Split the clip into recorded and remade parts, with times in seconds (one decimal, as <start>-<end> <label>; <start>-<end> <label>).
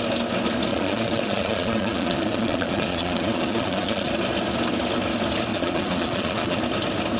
0.0-0.7 recorded; 0.7-4.1 remade; 4.1-5.5 recorded; 5.5-6.6 remade; 6.6-7.2 recorded